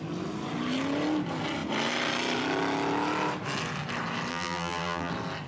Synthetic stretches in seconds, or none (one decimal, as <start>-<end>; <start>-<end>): 4.3-5.1

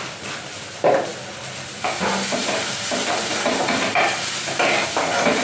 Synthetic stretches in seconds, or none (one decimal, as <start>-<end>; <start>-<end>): 1.1-1.7; 2.4-5.4

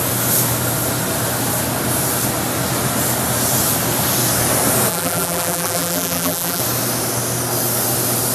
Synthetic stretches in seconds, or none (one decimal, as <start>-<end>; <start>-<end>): 4.9-6.6